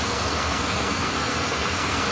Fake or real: fake